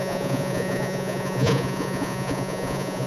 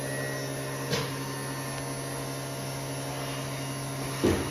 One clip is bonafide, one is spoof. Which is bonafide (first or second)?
second